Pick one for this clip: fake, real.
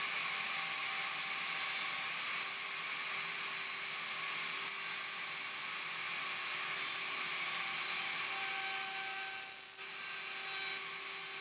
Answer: real